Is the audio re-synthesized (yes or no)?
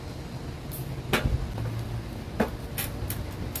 no